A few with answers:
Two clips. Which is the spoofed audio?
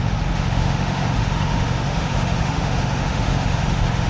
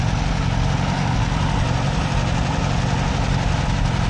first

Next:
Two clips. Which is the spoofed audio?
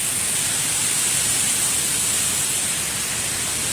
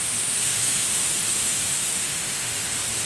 second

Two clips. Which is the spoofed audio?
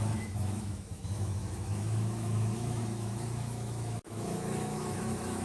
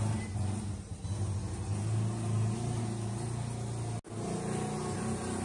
first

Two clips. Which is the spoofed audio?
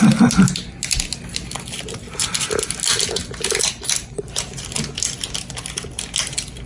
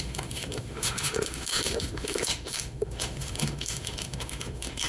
second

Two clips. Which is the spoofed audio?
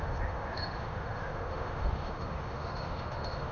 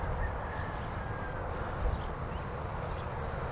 first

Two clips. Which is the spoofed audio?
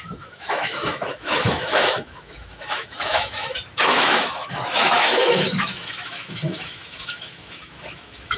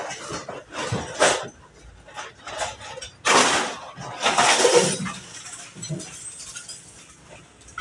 first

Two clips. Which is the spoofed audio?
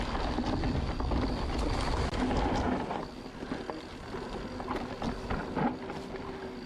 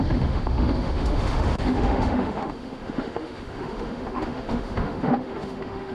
second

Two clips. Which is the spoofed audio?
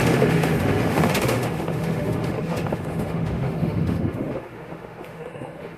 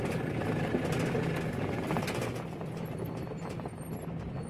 first